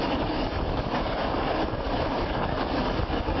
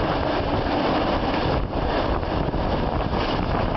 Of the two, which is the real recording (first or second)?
second